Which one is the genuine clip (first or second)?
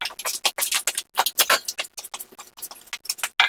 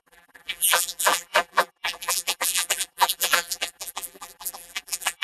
first